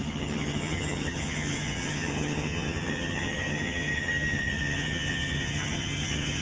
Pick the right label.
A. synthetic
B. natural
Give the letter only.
A